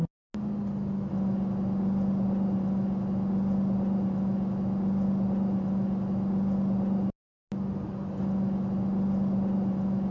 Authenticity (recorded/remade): recorded